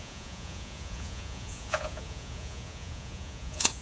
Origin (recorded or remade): remade